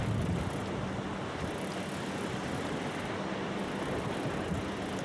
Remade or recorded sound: recorded